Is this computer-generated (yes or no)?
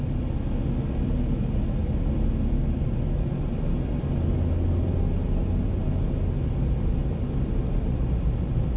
no